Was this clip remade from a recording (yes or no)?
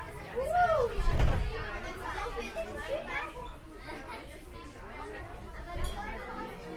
no